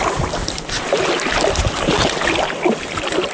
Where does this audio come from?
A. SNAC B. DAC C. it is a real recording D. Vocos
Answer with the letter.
C